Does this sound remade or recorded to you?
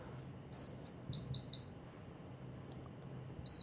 remade